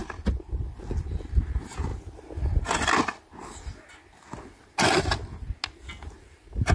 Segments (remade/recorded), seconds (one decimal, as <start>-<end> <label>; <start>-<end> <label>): 0.0-6.7 recorded